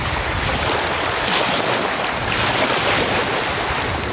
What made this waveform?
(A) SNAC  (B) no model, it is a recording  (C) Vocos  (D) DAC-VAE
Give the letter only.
B